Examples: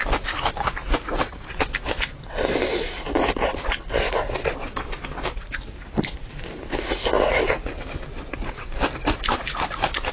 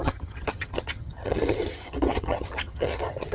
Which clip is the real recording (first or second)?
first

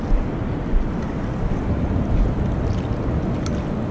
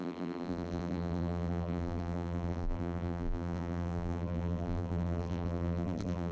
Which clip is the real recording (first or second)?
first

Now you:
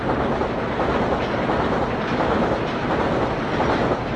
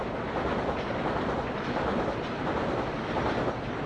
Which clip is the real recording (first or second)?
first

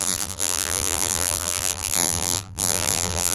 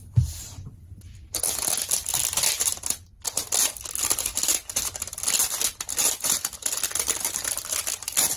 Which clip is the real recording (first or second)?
second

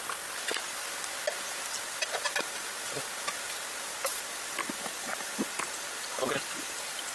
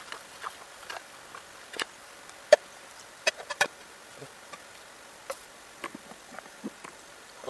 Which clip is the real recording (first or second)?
first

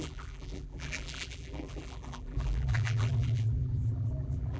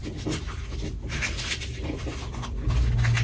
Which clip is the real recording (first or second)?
second